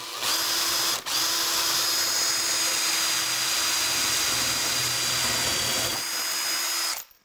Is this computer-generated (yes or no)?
no